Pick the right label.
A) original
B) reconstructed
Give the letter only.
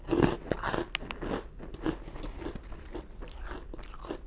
A